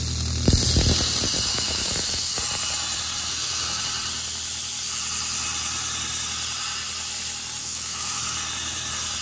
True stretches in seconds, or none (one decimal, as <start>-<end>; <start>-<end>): 0.0-1.5; 2.4-3.3; 3.8-7.6; 8.2-9.2